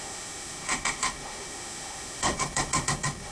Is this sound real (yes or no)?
no